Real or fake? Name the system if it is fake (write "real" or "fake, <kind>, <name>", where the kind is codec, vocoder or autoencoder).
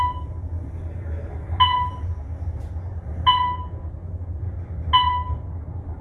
real